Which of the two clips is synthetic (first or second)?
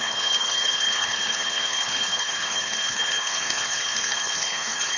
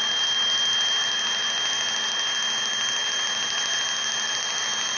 first